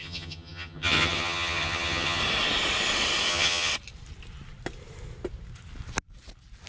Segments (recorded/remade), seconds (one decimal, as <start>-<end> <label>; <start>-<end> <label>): 0.0-2.2 remade; 2.2-3.3 recorded; 3.3-3.7 remade; 3.7-6.7 recorded